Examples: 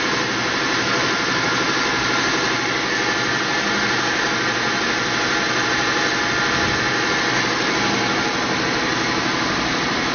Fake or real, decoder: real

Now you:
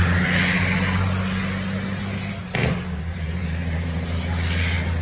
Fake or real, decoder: real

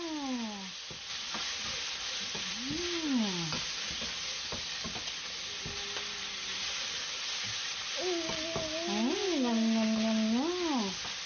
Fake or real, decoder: real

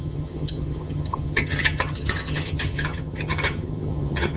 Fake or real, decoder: fake, vocoder, HiFi-GAN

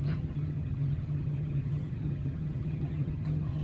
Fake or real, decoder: fake, vocoder, HiFi-GAN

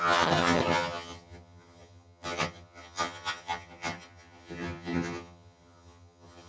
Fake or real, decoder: fake, vocoder, HiFi-GAN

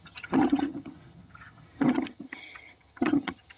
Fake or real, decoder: fake, vocoder, HiFi-GAN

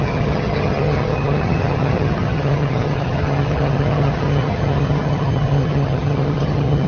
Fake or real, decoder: fake, vocoder, HiFi-GAN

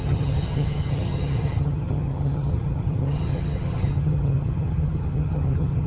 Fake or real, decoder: fake, vocoder, HiFi-GAN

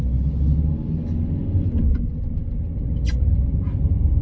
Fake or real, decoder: real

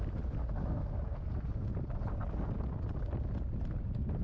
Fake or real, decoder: real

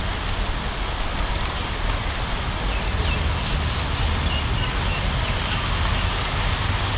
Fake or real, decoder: real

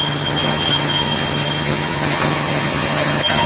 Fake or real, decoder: fake, vocoder, HiFi-GAN